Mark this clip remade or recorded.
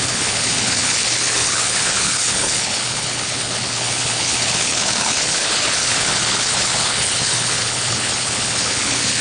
remade